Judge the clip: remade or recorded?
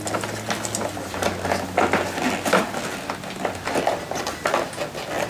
recorded